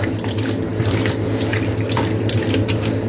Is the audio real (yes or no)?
yes